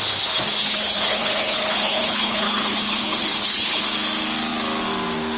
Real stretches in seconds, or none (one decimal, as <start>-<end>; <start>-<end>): 0.0-0.6; 3.8-5.4